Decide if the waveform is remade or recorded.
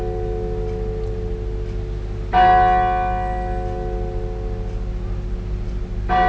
recorded